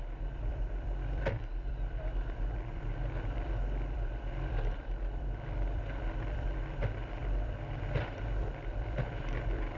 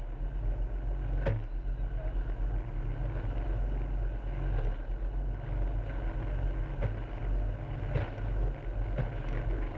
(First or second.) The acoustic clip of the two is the second